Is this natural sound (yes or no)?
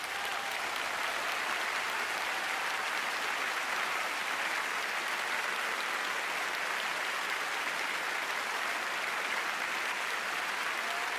yes